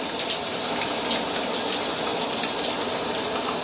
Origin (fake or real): real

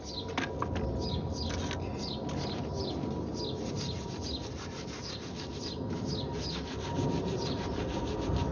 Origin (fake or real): real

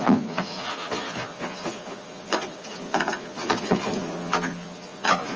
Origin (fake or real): fake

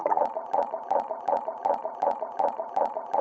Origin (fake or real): fake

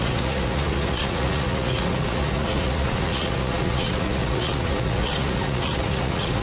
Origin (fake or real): fake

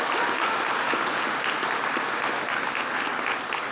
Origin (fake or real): real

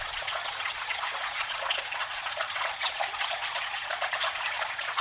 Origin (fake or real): fake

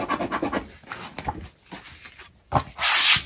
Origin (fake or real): real